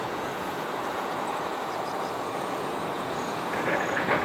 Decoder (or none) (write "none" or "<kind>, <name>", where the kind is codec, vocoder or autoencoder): vocoder, Vocos